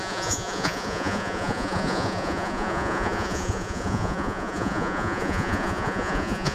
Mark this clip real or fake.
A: fake